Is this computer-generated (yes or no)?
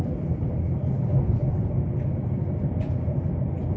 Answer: no